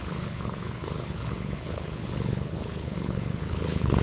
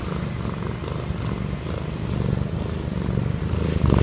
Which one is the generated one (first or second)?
first